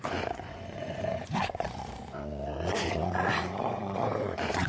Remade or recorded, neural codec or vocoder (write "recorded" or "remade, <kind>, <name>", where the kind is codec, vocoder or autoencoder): remade, vocoder, Vocos